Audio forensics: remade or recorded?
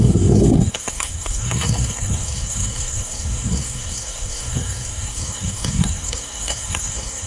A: remade